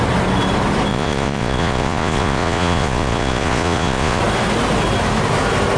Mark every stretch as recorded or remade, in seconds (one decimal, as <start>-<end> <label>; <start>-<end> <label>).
0.0-0.9 recorded; 0.9-4.2 remade; 4.2-5.8 recorded